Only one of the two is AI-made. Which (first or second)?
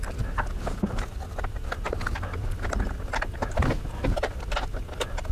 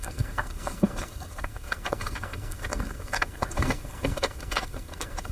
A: second